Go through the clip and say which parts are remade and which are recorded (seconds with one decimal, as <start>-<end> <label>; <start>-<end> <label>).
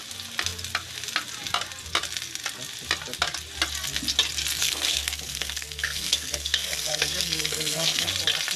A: 0.0-4.6 recorded; 4.6-8.1 remade; 8.1-8.6 recorded